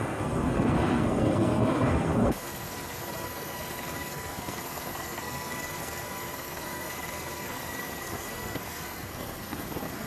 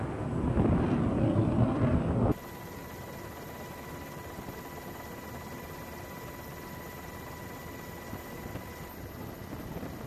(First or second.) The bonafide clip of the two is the second